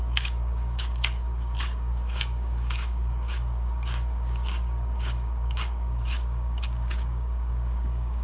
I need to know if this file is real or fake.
fake